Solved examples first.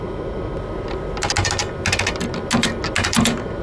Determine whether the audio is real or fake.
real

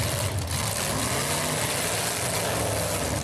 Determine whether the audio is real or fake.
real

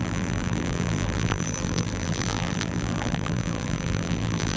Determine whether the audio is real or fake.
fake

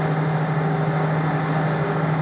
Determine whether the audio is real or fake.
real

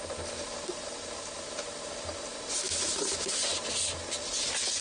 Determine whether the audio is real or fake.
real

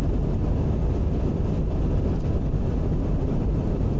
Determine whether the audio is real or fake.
real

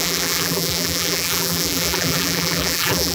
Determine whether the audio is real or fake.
fake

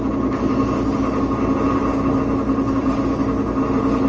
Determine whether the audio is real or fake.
real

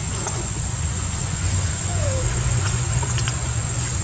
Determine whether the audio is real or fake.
fake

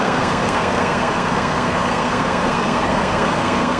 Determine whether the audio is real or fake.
fake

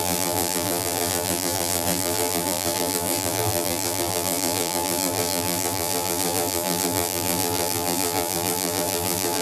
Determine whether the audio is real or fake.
fake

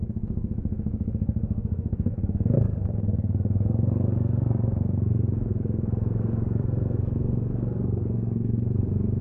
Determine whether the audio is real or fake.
fake